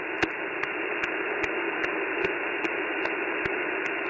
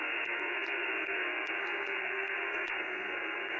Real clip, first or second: first